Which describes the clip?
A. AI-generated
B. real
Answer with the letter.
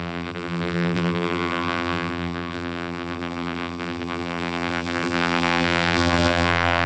A